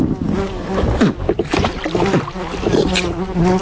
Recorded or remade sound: recorded